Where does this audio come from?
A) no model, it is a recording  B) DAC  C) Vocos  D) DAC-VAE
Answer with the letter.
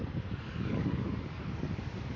B